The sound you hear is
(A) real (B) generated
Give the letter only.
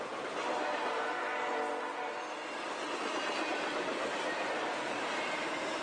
A